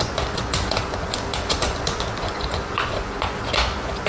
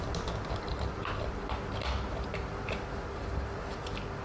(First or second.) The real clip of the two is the second